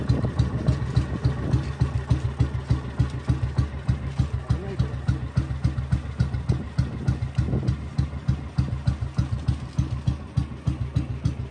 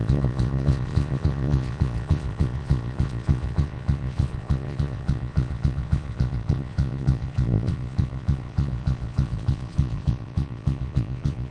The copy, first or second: second